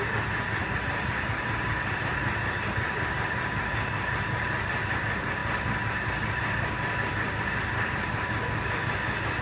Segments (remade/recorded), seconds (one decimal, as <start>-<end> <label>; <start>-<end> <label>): 0.0-0.6 recorded; 0.6-5.0 remade; 5.0-9.4 recorded